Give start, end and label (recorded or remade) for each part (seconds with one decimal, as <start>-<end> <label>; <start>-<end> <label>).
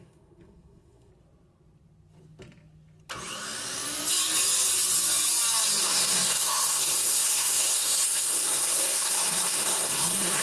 0.0-1.1 remade; 1.1-5.8 recorded; 5.8-10.4 remade